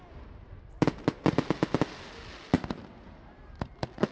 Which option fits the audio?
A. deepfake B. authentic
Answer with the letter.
B